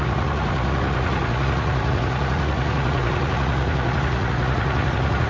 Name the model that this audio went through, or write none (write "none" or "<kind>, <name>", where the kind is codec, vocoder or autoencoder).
vocoder, Vocos